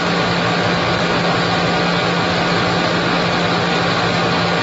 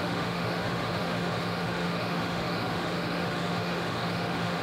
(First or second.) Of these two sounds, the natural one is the first